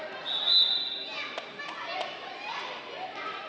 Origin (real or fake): real